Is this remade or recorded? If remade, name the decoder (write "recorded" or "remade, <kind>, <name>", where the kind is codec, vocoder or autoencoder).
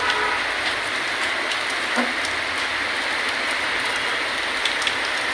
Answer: recorded